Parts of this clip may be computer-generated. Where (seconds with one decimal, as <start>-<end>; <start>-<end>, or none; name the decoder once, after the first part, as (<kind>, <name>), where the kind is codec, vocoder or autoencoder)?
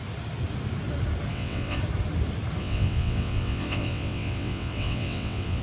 1.3-1.8 (vocoder, WaveNeXt); 2.6-5.6